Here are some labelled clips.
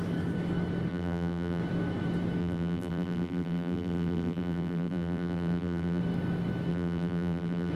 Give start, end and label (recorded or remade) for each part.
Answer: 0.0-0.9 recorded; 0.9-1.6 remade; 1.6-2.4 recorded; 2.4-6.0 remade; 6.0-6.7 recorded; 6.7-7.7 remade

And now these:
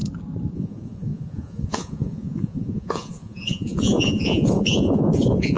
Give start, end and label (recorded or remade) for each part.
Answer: 0.0-0.5 recorded; 0.5-5.6 remade

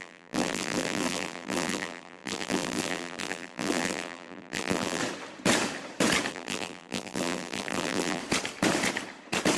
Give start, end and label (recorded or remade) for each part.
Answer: 0.0-5.0 remade; 5.0-6.3 recorded; 6.3-8.2 remade; 8.2-9.6 recorded

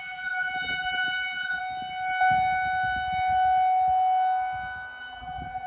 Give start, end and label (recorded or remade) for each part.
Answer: 0.0-1.6 remade; 1.6-5.0 recorded; 5.0-5.7 remade

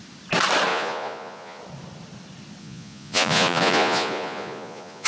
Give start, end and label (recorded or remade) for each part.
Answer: 0.0-0.7 recorded; 0.7-1.6 remade; 1.6-2.6 recorded; 2.6-5.1 remade

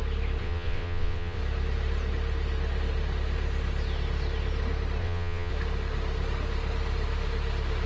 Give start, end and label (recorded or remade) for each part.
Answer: 0.0-0.4 recorded; 0.4-1.4 remade; 1.4-5.0 recorded; 5.0-5.5 remade; 5.5-7.9 recorded